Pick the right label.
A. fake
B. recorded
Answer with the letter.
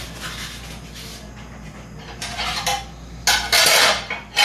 B